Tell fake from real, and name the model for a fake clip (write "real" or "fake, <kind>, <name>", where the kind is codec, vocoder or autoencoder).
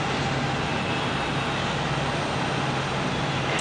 real